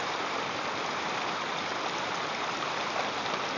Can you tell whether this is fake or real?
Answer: real